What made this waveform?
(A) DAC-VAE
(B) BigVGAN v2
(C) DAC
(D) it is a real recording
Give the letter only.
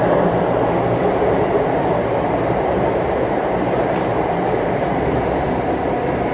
B